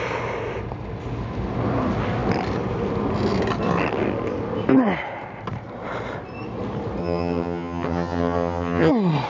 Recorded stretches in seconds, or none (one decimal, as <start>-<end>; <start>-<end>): 0.0-7.0; 8.9-9.3